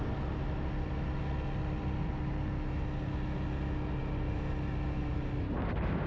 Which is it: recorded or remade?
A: recorded